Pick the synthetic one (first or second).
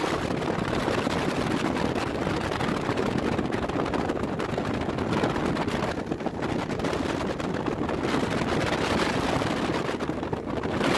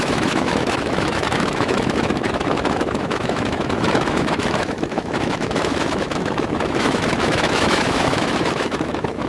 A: second